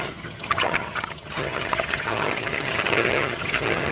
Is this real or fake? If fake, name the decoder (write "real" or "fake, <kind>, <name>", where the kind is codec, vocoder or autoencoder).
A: fake, vocoder, HiFi-GAN